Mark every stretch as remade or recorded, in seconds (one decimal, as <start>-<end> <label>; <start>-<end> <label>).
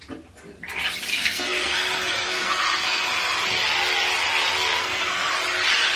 0.0-1.1 recorded; 1.1-3.2 remade; 3.2-4.7 recorded; 4.7-5.3 remade; 5.3-6.0 recorded